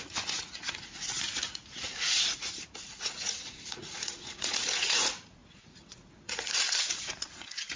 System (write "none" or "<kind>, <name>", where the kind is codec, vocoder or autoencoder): vocoder, Vocos